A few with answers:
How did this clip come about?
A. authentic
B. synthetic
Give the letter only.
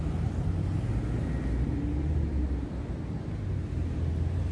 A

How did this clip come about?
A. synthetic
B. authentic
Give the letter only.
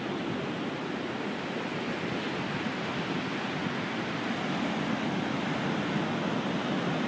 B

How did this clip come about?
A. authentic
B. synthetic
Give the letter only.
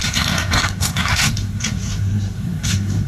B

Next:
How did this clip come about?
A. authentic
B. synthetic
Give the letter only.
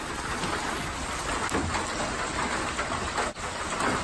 A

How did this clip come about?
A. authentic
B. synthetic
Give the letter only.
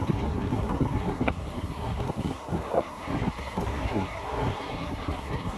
B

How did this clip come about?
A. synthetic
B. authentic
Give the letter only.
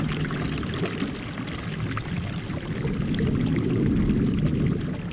B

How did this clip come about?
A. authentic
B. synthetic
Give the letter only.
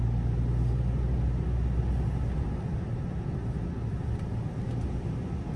A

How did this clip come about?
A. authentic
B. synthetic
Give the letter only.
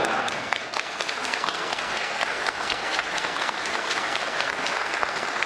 B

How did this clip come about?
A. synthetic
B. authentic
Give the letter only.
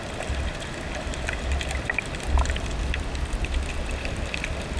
B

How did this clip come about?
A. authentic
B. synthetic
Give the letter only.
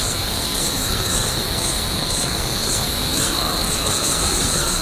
B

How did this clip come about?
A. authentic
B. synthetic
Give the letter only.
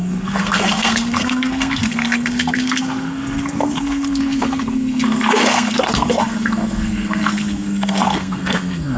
B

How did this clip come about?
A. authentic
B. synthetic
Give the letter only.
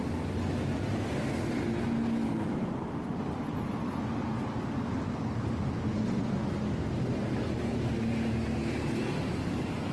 A